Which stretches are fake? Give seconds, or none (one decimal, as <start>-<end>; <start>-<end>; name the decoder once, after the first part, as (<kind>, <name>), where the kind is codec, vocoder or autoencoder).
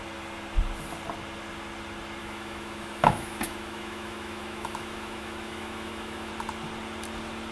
2.2-6.3 (autoencoder, DAC-VAE)